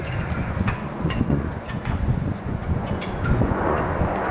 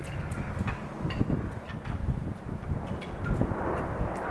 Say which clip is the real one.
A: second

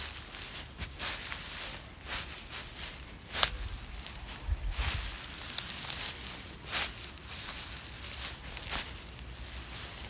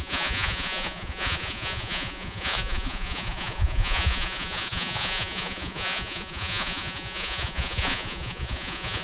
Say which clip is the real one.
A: first